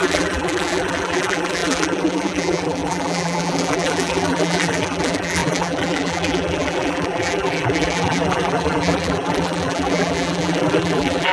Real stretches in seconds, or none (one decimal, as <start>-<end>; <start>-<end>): none